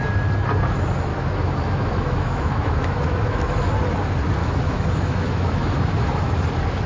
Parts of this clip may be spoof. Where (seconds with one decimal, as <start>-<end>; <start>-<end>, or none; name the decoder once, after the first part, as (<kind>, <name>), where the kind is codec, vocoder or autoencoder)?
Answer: 1.1-3.7 (autoencoder, DAC-VAE); 4.4-6.4